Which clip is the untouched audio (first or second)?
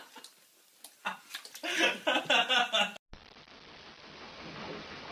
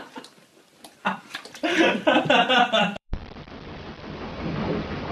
first